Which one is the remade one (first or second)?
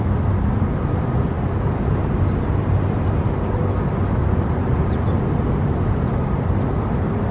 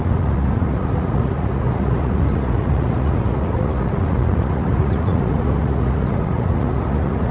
second